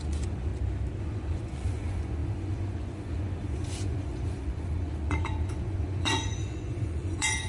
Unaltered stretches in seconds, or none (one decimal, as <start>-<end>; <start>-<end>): 0.5-1.0